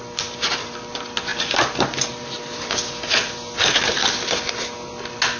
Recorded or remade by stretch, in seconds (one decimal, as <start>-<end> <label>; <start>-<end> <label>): 0.0-5.4 recorded